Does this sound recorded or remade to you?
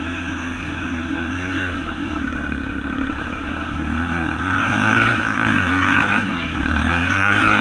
remade